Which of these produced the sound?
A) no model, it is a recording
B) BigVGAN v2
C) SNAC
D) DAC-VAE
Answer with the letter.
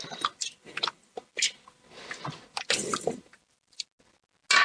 A